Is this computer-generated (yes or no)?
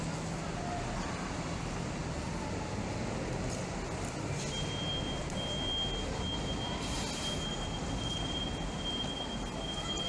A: no